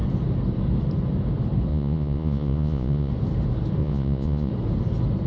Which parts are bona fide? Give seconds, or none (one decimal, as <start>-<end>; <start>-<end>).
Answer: 0.0-1.7; 3.1-3.8; 4.5-5.3